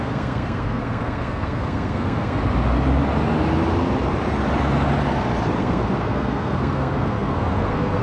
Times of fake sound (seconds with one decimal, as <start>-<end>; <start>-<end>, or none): 0.0-2.4; 5.6-8.0